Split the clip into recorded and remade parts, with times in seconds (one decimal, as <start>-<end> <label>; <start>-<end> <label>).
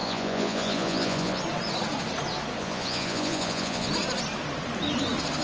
0.0-1.4 remade; 1.4-2.6 recorded; 2.6-3.9 remade; 3.9-5.4 recorded